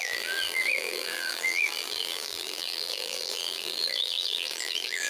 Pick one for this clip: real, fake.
fake